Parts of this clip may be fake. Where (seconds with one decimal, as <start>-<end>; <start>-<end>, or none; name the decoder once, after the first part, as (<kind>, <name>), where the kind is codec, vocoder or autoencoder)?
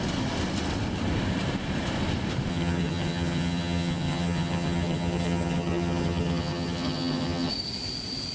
2.5-7.5 (vocoder, HiFi-GAN)